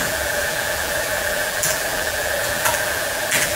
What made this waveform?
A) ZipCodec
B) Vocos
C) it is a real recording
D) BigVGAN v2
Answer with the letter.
D